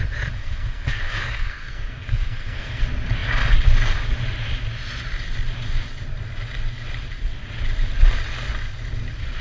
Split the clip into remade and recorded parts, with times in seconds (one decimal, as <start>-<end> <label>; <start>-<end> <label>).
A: 0.0-0.4 recorded; 0.4-2.8 remade; 2.8-9.4 recorded

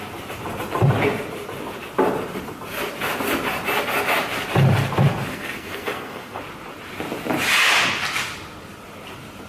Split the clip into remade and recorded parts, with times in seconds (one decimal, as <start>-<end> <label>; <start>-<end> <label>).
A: 0.0-5.3 recorded; 5.3-6.4 remade; 6.4-9.5 recorded

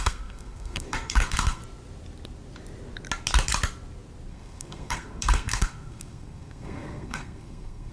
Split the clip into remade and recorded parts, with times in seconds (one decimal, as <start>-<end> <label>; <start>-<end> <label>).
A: 0.0-1.6 remade; 1.6-4.3 recorded; 4.3-7.9 remade

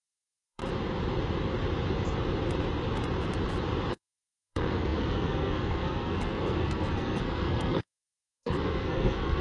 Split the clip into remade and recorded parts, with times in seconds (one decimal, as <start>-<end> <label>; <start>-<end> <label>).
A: 0.0-0.6 remade; 0.6-3.9 recorded; 3.9-9.4 remade

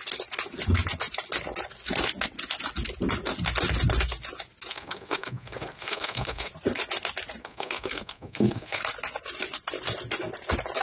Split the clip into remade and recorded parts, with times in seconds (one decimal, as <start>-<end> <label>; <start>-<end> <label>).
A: 0.0-4.7 recorded; 4.7-6.5 remade; 6.5-7.4 recorded; 7.4-8.8 remade; 8.8-10.8 recorded

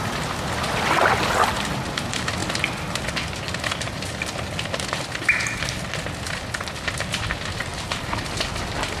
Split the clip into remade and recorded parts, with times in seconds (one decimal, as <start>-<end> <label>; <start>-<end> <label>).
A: 0.0-9.0 recorded

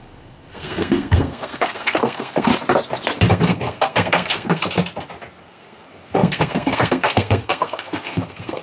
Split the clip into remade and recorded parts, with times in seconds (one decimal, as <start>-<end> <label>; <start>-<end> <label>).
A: 0.0-2.5 remade; 2.5-3.3 recorded; 3.3-4.6 remade; 4.6-5.4 recorded; 5.4-8.6 remade